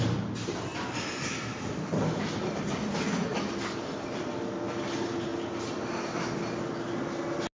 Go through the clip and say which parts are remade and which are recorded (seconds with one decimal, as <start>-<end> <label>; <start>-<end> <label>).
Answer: 0.0-0.7 recorded; 0.7-1.8 remade; 1.8-7.6 recorded